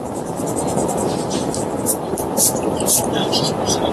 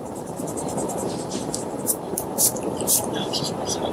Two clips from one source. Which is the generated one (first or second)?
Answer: second